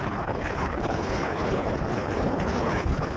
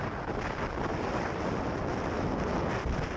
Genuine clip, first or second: second